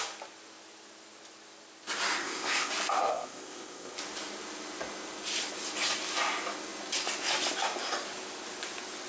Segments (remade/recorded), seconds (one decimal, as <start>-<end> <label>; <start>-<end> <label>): 0.0-2.2 recorded; 2.2-2.7 remade; 2.7-3.1 recorded; 3.1-4.0 remade; 4.0-9.1 recorded